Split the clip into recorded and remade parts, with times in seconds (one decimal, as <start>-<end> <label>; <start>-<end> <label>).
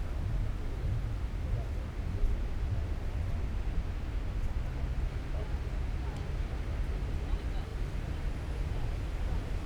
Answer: 0.0-9.7 recorded